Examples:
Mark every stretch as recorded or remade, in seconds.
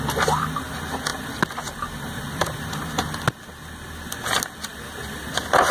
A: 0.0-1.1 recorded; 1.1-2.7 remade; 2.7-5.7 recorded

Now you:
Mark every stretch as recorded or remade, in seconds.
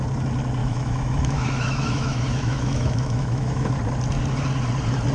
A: 0.0-0.6 recorded; 0.6-3.7 remade; 3.7-5.1 recorded